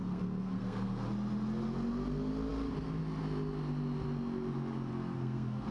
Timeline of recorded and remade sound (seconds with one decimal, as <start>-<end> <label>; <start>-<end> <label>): 0.0-1.0 remade; 1.0-4.9 recorded; 4.9-5.7 remade